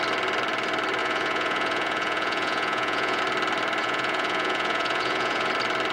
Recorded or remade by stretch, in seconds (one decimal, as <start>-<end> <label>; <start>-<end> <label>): 0.0-1.0 recorded; 1.0-3.2 remade; 3.2-3.8 recorded; 3.8-5.5 remade; 5.5-5.9 recorded